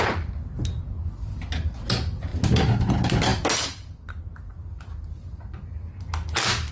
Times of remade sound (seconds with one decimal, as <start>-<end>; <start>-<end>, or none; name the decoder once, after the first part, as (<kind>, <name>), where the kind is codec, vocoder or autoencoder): none